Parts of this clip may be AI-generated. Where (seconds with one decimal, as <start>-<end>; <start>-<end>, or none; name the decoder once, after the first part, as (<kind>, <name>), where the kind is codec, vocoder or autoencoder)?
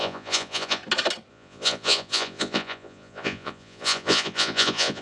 0.0-0.8 (vocoder, Vocos); 1.3-5.0